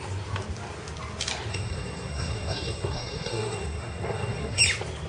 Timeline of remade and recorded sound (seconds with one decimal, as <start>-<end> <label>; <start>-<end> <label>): 0.0-1.5 recorded; 1.5-4.6 remade; 4.6-5.1 recorded